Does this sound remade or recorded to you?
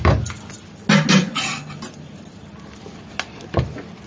recorded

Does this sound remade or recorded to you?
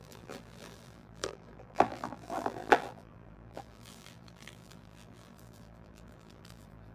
remade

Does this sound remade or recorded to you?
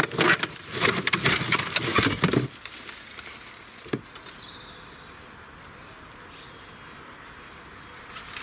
recorded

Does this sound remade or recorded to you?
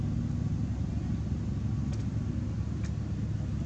recorded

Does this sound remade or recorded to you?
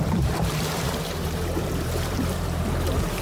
remade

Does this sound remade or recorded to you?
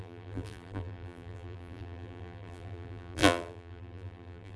remade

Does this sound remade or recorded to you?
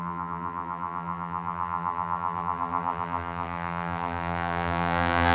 remade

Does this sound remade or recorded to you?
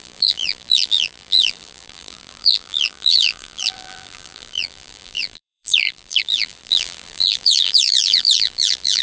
remade